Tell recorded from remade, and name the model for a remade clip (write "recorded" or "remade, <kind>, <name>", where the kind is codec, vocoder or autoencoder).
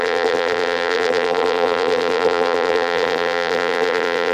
remade, vocoder, BigVGAN v2